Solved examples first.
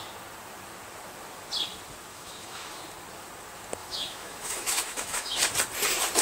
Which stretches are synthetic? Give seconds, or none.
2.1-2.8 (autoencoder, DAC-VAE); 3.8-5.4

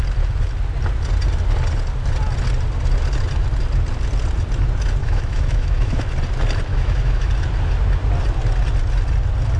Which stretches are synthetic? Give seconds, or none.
5.0-6.0 (autoencoder, DAC-VAE); 6.7-7.3

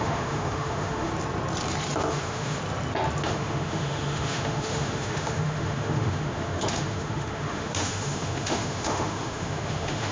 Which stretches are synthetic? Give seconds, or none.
0.0-1.1 (autoencoder, DAC-VAE); 2.1-2.6; 3.2-10.1